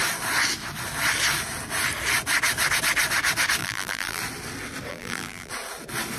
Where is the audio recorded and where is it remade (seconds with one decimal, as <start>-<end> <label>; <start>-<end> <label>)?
0.0-3.6 recorded; 3.6-4.2 remade; 4.2-4.9 recorded; 4.9-5.5 remade; 5.5-6.2 recorded